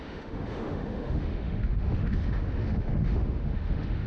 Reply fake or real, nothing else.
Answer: fake